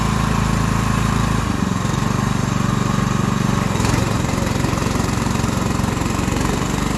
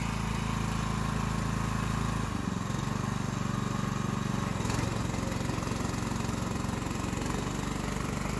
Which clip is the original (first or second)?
second